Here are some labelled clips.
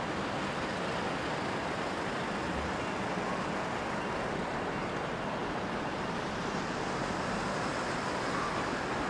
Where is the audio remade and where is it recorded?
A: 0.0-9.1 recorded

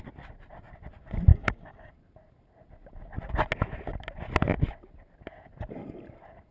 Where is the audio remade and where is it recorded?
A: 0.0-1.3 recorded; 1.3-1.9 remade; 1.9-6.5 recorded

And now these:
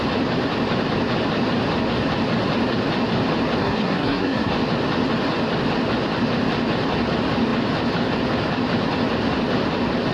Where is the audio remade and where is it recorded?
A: 0.0-3.6 recorded; 3.6-4.5 remade; 4.5-10.1 recorded

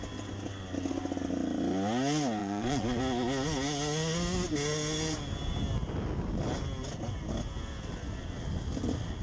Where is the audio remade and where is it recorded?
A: 0.0-2.4 recorded; 2.4-3.0 remade; 3.0-9.2 recorded

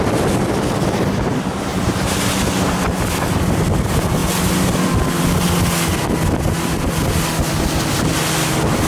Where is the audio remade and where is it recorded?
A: 0.0-4.2 recorded; 4.2-4.9 remade; 4.9-8.9 recorded